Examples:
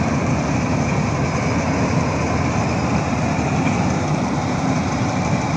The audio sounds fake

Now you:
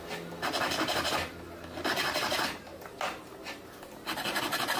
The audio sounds real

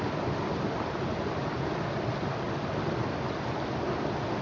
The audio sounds real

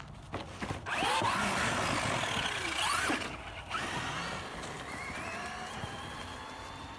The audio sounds real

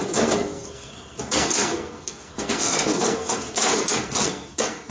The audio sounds fake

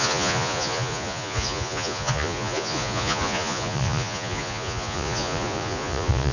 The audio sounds fake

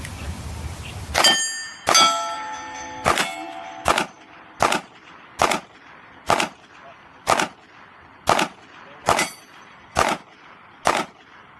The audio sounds real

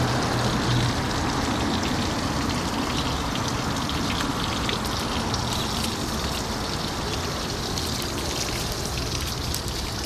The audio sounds real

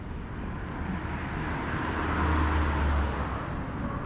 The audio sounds real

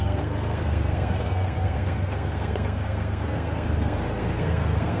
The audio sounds fake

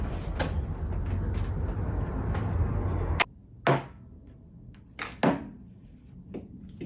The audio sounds real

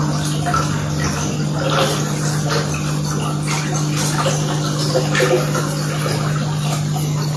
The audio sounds real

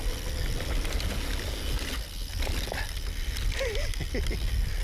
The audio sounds real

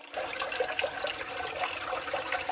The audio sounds real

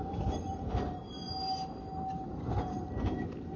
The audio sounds real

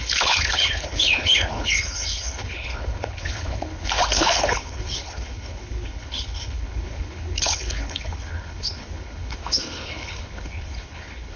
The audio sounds fake